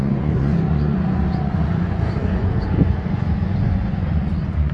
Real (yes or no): no